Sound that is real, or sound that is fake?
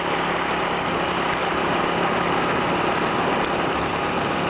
real